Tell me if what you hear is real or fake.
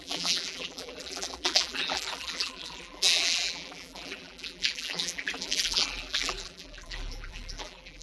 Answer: fake